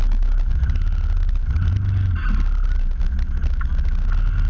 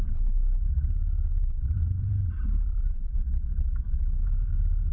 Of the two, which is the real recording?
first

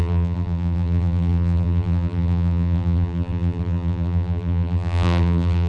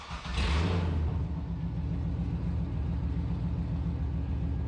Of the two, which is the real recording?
second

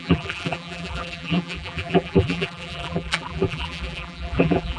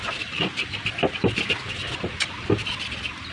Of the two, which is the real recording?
second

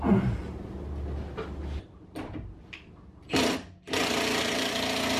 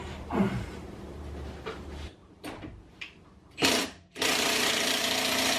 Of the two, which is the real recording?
first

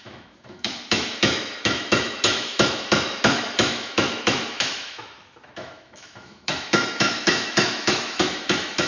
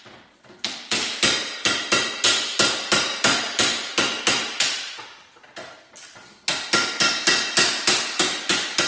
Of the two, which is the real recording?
second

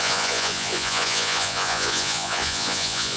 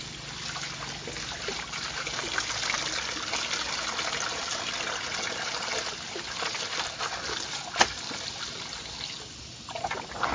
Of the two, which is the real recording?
second